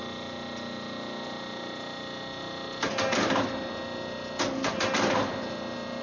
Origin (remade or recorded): recorded